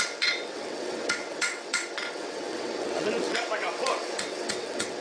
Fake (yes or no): yes